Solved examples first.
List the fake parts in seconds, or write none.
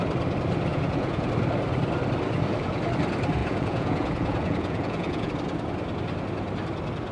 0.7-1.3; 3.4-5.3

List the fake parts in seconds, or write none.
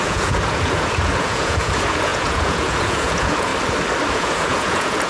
0.0-3.5; 4.1-5.1